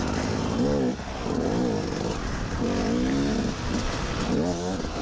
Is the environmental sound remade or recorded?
recorded